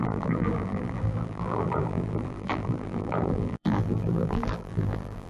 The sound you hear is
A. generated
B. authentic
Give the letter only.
A